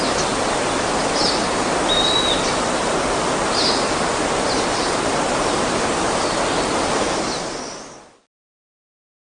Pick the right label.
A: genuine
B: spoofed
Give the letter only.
A